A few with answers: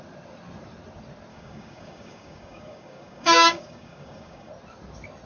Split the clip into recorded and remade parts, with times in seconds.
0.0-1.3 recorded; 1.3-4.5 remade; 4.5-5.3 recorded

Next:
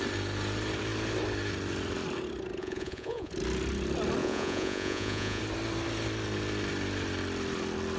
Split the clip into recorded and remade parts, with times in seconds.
0.0-2.6 recorded; 2.6-3.3 remade; 3.3-4.2 recorded; 4.2-5.4 remade; 5.4-8.0 recorded

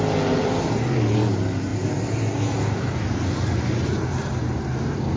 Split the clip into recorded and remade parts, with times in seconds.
0.0-5.2 recorded

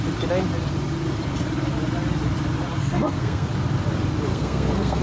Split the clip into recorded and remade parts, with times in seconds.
0.0-2.8 recorded; 2.8-3.5 remade; 3.5-4.3 recorded; 4.3-5.0 remade

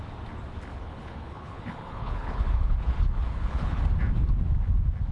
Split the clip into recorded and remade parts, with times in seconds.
0.0-0.7 recorded; 0.7-3.8 remade; 3.8-5.1 recorded

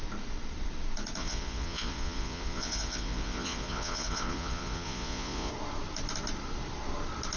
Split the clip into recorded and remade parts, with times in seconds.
0.0-1.2 recorded; 1.2-5.5 remade; 5.5-7.4 recorded